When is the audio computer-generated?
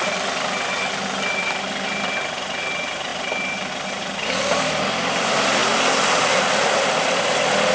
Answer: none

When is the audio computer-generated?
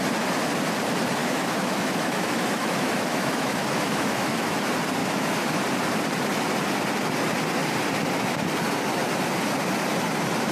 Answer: 1.2-4.6 (autoencoder, DAC-VAE); 5.0-5.6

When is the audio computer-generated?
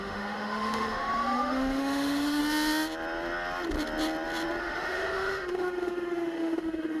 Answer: 0.0-2.4 (autoencoder, DAC-VAE); 4.6-7.0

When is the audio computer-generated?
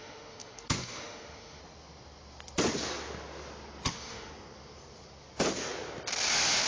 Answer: 0.0-1.6 (autoencoder, DAC-VAE); 3.9-4.3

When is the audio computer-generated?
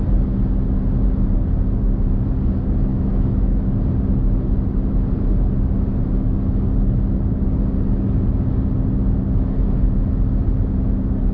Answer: 2.9-3.7 (autoencoder, DAC-VAE)